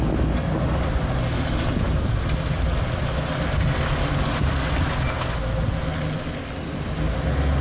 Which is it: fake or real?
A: real